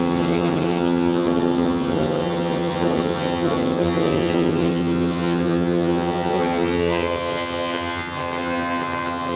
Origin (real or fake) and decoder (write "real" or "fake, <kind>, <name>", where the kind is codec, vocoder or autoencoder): fake, vocoder, HiFi-GAN